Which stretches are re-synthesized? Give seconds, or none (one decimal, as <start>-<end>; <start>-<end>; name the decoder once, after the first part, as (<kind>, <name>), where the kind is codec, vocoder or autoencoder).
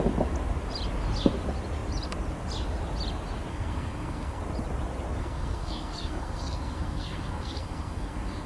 3.5-4.4 (codec, SNAC); 5.2-8.5